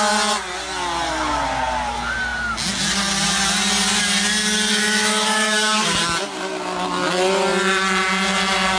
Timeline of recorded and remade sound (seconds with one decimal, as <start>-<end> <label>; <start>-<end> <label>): 0.0-4.7 recorded; 4.7-5.8 remade; 5.8-8.8 recorded